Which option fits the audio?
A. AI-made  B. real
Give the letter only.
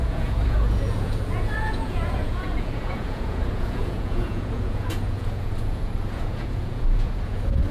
A